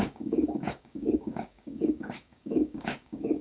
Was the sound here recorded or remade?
remade